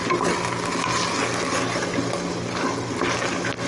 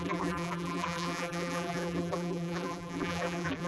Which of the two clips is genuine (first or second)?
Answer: first